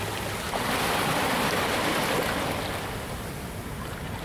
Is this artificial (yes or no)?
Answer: no